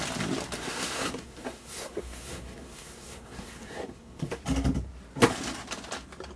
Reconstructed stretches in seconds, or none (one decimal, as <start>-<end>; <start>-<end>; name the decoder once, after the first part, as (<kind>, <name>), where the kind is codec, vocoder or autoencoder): 0.6-4.4 (codec, SNAC)